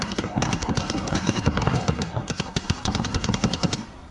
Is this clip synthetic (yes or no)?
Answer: yes